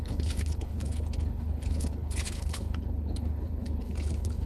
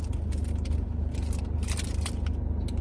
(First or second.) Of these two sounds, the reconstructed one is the first